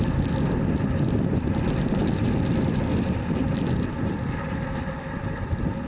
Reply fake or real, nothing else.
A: real